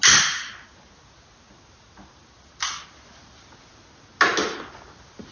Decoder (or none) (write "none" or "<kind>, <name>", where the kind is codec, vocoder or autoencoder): none